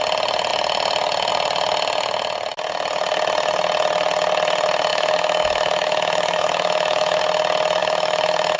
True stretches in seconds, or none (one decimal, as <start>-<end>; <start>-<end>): 0.0-4.9; 7.2-7.8